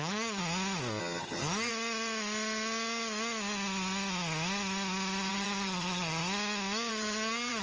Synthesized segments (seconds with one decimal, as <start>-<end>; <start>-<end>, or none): 0.0-0.4; 1.0-1.7; 5.3-6.2; 6.9-7.6